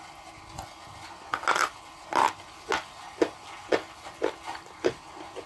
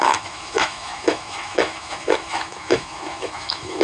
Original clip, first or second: first